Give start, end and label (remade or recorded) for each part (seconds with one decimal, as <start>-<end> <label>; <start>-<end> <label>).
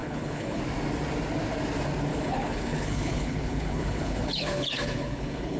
0.0-0.6 remade; 0.6-2.1 recorded; 2.1-5.6 remade